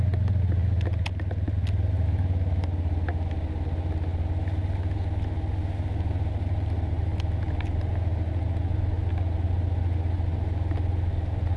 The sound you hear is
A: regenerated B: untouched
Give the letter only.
B